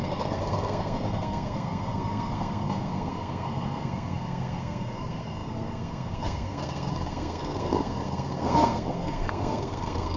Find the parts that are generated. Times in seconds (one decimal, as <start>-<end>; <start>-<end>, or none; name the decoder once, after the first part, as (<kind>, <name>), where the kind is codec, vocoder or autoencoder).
0.0-10.2 (codec, SNAC)